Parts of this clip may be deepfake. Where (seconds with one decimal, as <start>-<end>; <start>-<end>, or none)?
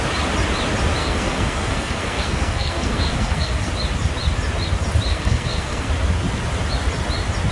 1.0-3.7; 5.1-5.9